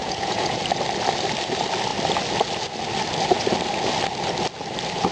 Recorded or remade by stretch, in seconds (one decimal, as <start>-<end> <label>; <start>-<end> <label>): 0.0-0.6 remade; 0.6-5.1 recorded